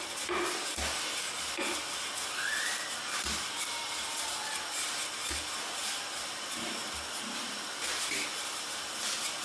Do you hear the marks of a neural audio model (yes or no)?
no